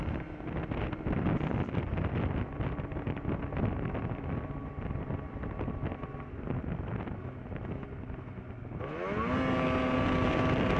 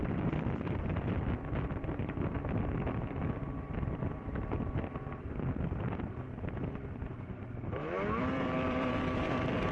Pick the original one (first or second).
first